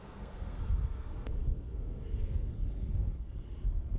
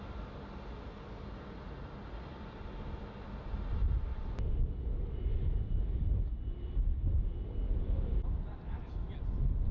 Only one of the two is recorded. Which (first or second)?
second